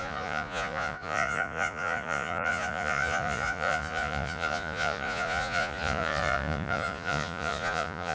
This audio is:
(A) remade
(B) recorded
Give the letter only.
A